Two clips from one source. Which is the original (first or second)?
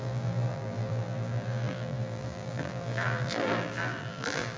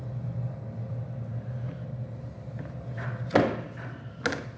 second